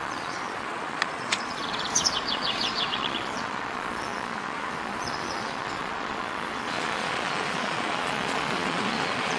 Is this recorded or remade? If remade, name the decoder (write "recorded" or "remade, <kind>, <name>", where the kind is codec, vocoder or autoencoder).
remade, vocoder, Vocos